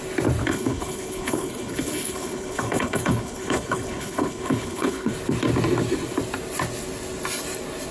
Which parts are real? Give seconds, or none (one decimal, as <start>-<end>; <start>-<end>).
0.0-0.4; 5.1-7.9